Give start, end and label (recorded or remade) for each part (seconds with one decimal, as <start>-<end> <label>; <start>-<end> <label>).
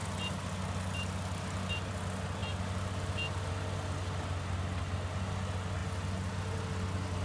0.0-7.2 recorded